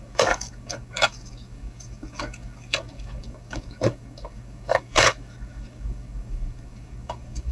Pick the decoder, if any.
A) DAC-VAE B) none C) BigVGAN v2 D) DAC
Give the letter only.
D